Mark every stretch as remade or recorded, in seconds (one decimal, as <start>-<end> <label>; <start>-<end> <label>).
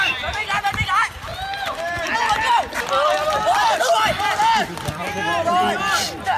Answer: 0.0-6.4 recorded